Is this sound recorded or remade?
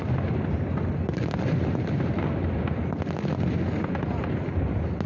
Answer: recorded